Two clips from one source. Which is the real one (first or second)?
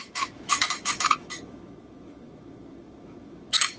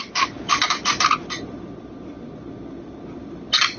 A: second